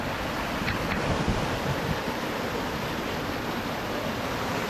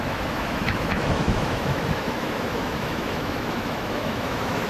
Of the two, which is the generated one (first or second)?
second